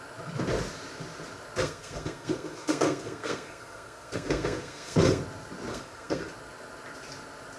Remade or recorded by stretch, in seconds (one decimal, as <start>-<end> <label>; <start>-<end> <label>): 0.0-1.6 recorded; 1.6-5.2 remade; 5.2-5.7 recorded; 5.7-6.3 remade; 6.3-7.6 recorded